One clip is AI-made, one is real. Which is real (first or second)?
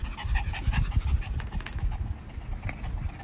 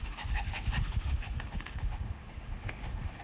first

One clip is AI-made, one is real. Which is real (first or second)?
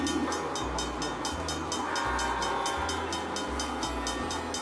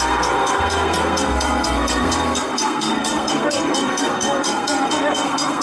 first